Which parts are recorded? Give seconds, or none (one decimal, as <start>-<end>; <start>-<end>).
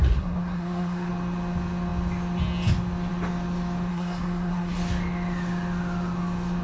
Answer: 1.1-3.9; 4.8-6.6